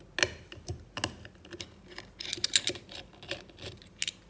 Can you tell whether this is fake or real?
real